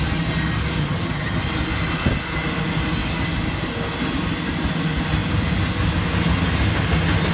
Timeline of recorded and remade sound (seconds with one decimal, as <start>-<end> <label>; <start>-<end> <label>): 0.0-0.8 recorded; 0.8-1.4 remade; 1.4-7.3 recorded